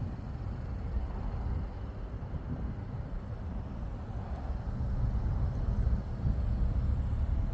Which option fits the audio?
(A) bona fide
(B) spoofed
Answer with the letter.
A